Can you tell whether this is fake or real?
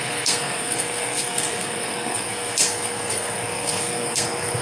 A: fake